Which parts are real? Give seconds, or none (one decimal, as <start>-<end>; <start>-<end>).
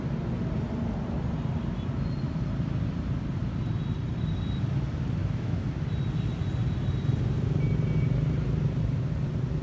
0.0-5.2; 5.7-9.6